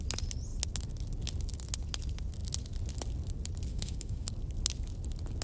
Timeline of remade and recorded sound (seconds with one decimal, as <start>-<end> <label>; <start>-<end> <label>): 0.0-3.7 recorded; 3.7-4.3 remade; 4.3-5.4 recorded